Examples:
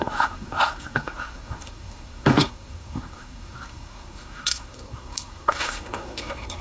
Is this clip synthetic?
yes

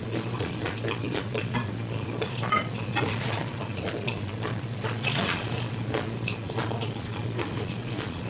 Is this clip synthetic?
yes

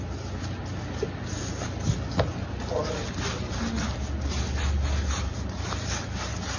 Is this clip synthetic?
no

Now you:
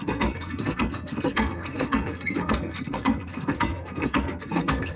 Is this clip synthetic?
yes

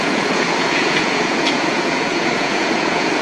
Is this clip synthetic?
yes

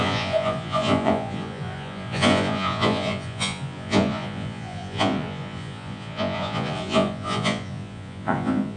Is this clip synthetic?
yes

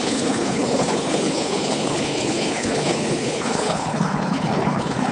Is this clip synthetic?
yes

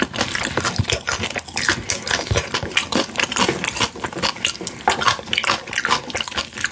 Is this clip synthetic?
no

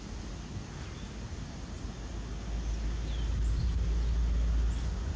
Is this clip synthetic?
no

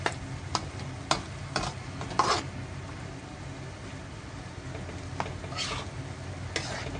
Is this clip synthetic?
no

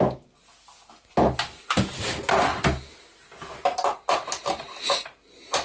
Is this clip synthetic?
no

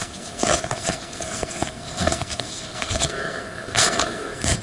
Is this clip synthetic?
yes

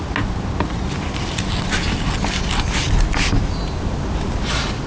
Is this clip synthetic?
no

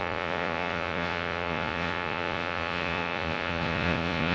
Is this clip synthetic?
yes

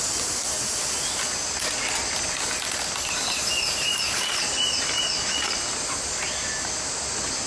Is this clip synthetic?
no